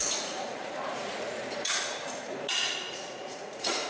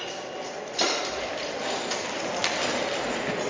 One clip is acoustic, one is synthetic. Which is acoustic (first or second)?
second